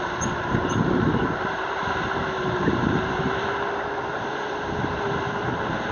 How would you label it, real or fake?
fake